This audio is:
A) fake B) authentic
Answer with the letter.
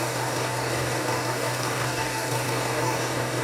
A